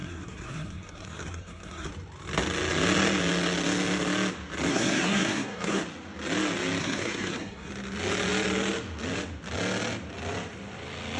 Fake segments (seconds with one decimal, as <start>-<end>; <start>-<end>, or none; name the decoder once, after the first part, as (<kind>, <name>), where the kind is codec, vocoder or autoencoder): 0.0-1.9 (codec, SNAC); 4.7-5.8; 6.8-7.7